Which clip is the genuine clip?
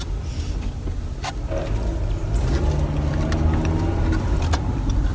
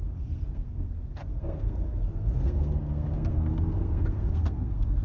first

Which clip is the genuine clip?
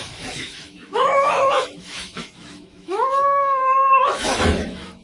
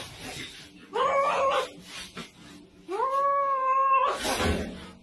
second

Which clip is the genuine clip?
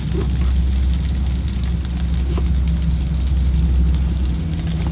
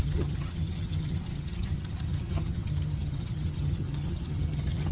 first